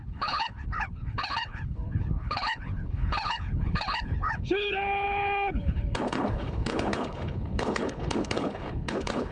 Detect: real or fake fake